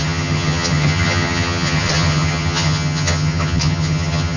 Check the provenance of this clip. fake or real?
fake